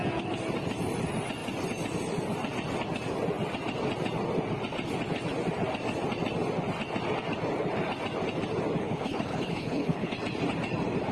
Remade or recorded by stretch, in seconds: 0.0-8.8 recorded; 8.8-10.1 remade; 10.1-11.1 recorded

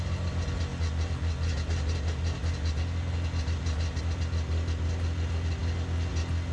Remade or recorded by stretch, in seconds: 0.0-6.5 recorded